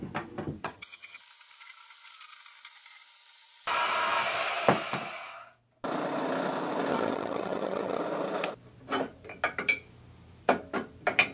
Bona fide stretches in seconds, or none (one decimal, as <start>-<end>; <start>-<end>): 0.0-0.6; 1.2-6.9; 8.0-11.3